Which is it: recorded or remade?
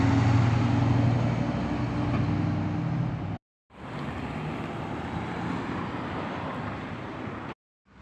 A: recorded